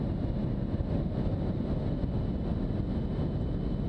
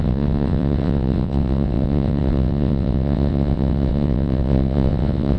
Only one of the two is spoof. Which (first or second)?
second